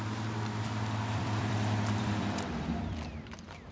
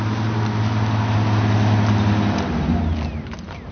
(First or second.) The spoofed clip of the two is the first